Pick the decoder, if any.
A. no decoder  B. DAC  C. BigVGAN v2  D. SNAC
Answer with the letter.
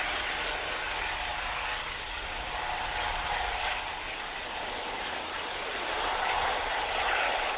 A